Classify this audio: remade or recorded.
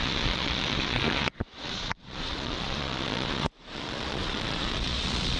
remade